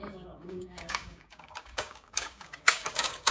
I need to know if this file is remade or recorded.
remade